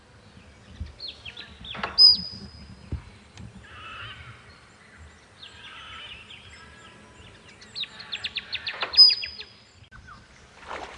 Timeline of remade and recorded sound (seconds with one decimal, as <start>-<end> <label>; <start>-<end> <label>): 0.0-11.0 recorded